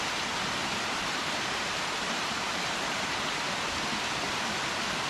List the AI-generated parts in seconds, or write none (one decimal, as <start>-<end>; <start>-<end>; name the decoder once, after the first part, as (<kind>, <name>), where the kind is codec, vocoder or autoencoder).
0.6-3.5 (vocoder, BigVGAN v2)